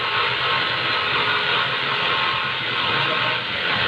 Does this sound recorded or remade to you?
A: recorded